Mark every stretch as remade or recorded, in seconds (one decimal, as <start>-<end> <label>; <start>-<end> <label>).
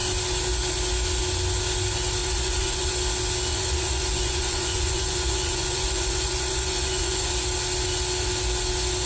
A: 0.0-2.2 recorded; 2.2-2.9 remade; 2.9-3.5 recorded; 3.5-7.3 remade; 7.3-9.1 recorded